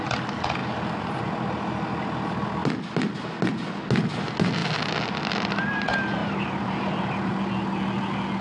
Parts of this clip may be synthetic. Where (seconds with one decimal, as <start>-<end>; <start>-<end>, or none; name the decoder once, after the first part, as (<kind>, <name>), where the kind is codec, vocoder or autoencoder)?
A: 6.2-7.3 (vocoder, BigVGAN v2)